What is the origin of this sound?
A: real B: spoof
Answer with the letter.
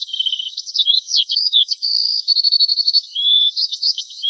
B